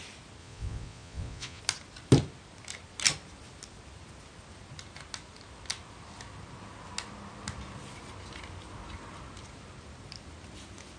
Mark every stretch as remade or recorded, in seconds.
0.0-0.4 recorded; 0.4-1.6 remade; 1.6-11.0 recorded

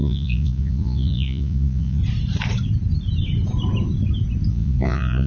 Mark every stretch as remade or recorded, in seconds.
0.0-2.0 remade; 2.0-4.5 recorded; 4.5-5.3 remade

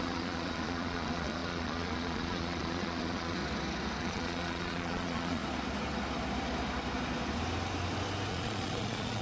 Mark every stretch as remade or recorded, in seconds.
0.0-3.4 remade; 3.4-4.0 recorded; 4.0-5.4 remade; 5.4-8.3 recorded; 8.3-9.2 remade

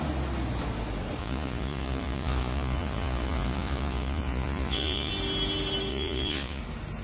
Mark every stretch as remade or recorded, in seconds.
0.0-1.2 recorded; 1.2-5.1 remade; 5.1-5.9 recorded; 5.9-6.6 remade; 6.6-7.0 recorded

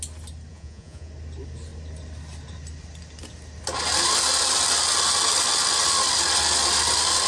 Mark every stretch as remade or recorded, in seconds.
0.0-0.5 recorded; 0.5-1.1 remade; 1.1-7.3 recorded

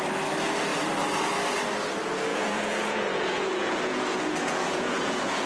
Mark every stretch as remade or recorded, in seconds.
0.0-2.3 recorded; 2.3-5.5 remade